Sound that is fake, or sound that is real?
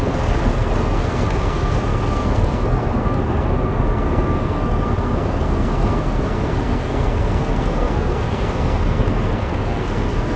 fake